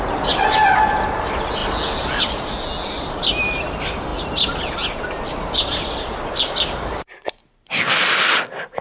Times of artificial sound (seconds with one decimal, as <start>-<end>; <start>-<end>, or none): none